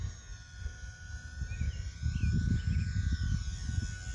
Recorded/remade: recorded